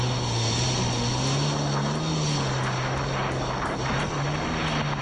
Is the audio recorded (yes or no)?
yes